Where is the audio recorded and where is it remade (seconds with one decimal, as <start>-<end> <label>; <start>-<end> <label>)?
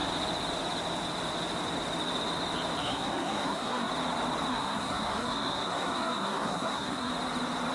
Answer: 0.0-2.8 recorded; 2.8-3.9 remade; 3.9-4.5 recorded; 4.5-7.1 remade; 7.1-7.7 recorded